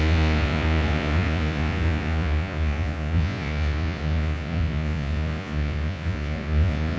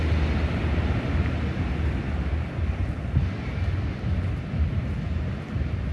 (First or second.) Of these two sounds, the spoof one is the first